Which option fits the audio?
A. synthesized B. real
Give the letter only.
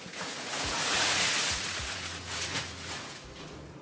A